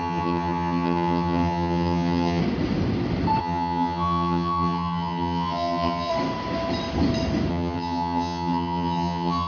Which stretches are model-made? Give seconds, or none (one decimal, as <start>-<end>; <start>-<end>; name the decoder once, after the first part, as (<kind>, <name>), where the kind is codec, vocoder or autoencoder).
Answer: 0.0-2.4 (vocoder, HiFi-GAN); 3.4-6.1; 7.5-9.5